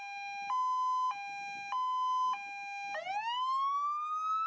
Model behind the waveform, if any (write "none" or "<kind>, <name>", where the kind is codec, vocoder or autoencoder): none